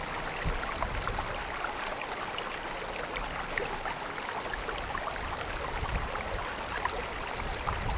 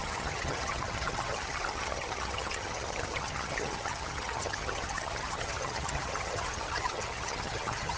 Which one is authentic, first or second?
first